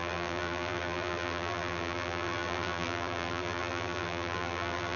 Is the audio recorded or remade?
remade